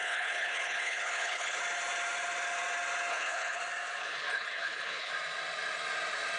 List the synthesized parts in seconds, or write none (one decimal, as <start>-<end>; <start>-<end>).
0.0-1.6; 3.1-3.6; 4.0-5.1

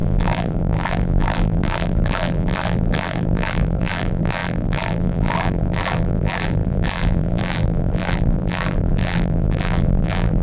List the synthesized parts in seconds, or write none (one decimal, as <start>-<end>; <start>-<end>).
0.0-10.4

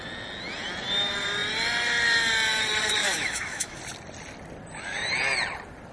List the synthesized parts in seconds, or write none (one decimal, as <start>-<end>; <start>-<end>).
3.0-3.8

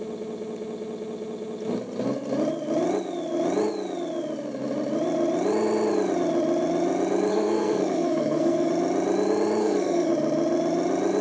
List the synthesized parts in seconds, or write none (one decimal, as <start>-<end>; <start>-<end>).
7.3-8.7; 9.6-10.1

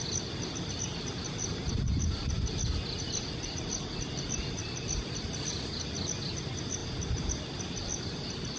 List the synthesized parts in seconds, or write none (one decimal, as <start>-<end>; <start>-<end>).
none

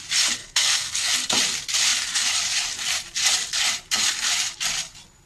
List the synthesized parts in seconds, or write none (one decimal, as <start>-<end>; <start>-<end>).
0.4-1.1

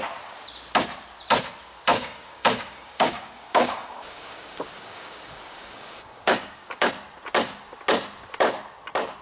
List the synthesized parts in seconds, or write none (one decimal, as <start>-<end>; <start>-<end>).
1.9-6.9

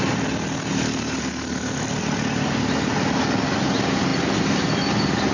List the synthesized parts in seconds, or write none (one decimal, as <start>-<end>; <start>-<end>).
none